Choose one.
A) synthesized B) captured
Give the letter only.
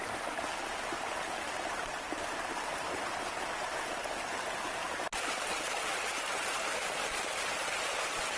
A